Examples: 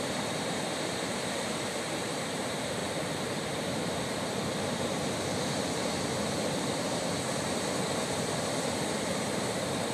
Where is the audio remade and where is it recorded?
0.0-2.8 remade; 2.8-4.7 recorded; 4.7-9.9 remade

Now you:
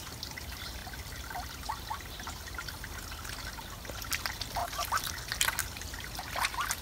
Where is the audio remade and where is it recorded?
0.0-4.6 recorded; 4.6-5.1 remade; 5.1-5.6 recorded; 5.6-6.8 remade

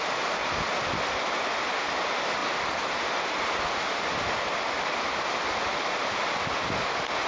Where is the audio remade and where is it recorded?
0.0-7.3 recorded

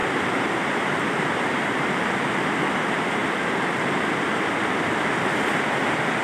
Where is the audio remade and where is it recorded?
0.0-2.3 remade; 2.3-6.2 recorded

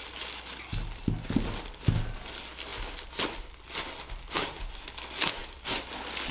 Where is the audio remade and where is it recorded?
0.0-6.3 recorded

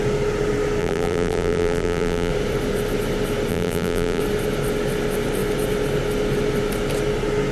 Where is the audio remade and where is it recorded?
0.0-0.8 recorded; 0.8-2.3 remade; 2.3-3.5 recorded; 3.5-4.2 remade; 4.2-7.5 recorded

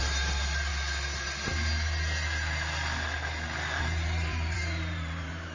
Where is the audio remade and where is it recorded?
0.0-0.7 remade; 0.7-3.8 recorded; 3.8-5.5 remade

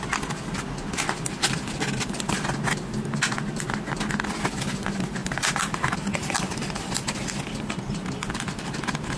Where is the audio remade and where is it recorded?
0.0-5.2 recorded; 5.2-6.4 remade; 6.4-9.2 recorded